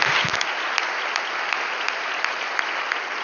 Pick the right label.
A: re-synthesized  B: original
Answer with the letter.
B